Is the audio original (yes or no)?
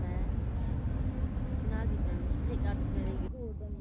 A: yes